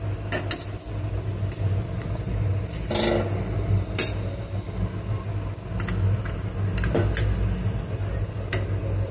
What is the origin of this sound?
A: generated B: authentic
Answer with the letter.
B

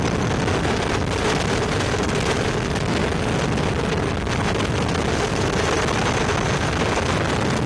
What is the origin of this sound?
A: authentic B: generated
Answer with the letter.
A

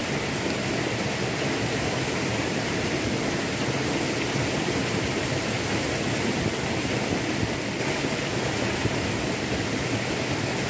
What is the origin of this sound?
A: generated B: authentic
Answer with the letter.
B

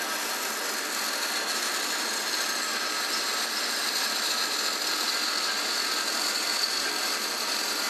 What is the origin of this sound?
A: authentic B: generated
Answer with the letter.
A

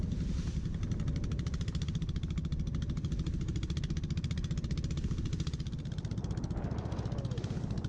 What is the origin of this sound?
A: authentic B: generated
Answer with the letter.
A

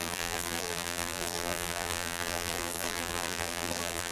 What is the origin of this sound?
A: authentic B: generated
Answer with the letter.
B